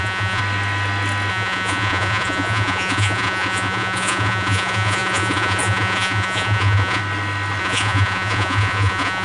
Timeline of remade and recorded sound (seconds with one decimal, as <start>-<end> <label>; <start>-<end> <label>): 0.0-0.4 remade; 0.4-1.3 recorded; 1.3-7.0 remade; 7.0-7.6 recorded; 7.6-9.2 remade